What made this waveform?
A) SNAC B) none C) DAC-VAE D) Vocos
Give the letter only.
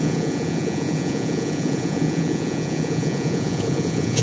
D